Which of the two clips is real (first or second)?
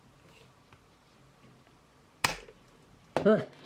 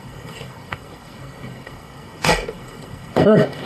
first